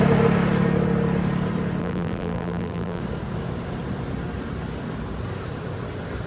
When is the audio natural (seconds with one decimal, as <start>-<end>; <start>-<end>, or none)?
0.0-1.8; 3.0-6.3